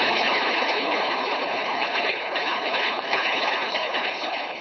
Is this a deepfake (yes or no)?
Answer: yes